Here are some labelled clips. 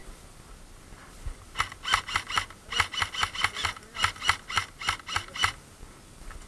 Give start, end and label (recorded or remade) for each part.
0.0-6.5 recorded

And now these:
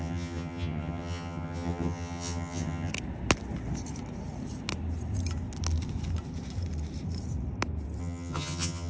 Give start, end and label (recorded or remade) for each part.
0.0-2.9 remade; 2.9-8.0 recorded; 8.0-8.9 remade

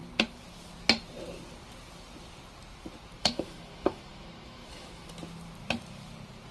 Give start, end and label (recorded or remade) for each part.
0.0-3.2 recorded; 3.2-5.1 remade; 5.1-6.5 recorded

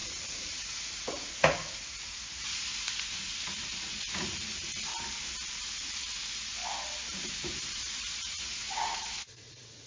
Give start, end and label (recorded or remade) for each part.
0.0-4.9 remade; 4.9-5.5 recorded; 5.5-6.6 remade; 6.6-7.3 recorded; 7.3-9.9 remade

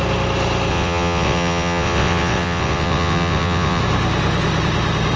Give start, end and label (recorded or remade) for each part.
0.0-0.7 recorded; 0.7-3.8 remade; 3.8-5.2 recorded

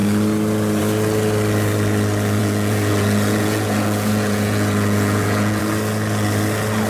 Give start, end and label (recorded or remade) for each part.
0.0-2.4 recorded; 2.4-5.6 remade; 5.6-6.9 recorded